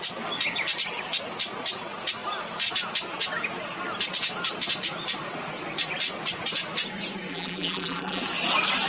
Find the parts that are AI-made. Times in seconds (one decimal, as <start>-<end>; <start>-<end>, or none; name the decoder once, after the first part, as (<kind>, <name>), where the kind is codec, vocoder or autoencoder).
7.3-8.2 (vocoder, BigVGAN v2)